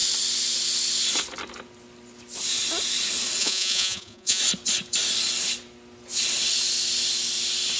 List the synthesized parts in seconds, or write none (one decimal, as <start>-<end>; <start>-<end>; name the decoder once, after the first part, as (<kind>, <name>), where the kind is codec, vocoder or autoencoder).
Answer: 3.4-4.4 (vocoder, Vocos)

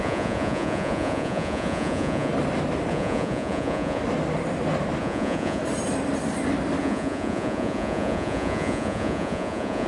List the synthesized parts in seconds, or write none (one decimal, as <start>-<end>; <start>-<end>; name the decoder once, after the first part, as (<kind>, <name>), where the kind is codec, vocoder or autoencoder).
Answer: 0.0-2.3 (vocoder, Vocos); 2.9-4.0; 5.0-5.6; 6.8-9.9

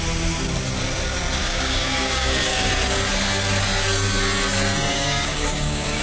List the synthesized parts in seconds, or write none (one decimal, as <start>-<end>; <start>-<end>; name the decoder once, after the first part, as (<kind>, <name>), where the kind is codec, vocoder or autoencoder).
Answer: 1.4-2.7 (codec, DAC); 4.9-6.0

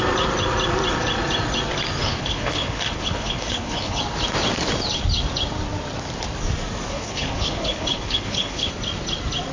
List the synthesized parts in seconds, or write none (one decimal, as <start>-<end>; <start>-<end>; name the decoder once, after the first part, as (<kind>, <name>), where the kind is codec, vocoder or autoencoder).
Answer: 2.0-4.0 (codec, HILCodec); 6.9-8.7

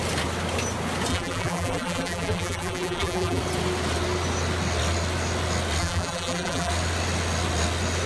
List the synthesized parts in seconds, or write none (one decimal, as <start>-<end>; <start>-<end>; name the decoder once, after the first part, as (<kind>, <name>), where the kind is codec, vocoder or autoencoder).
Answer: 1.1-3.4 (vocoder, BigVGAN v2); 5.8-6.7

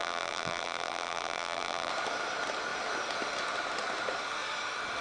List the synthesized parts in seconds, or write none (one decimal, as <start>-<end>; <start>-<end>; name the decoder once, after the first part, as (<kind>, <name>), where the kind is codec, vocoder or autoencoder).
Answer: 0.0-1.9 (vocoder, BigVGAN v2)